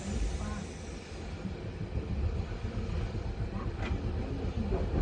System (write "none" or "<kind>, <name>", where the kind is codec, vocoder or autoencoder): none